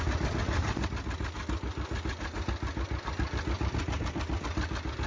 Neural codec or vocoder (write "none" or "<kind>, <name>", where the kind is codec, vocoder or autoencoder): none